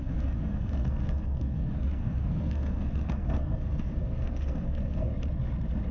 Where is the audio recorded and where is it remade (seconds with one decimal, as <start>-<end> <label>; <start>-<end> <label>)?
0.0-5.1 remade; 5.1-5.9 recorded